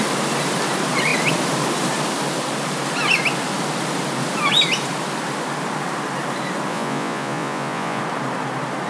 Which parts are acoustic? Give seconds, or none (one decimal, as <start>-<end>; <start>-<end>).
0.0-6.7; 8.0-8.9